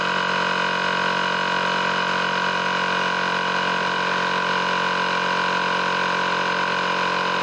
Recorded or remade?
recorded